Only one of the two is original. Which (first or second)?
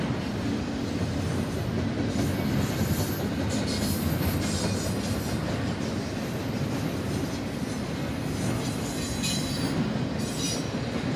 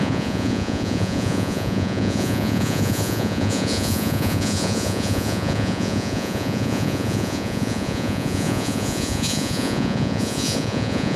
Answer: first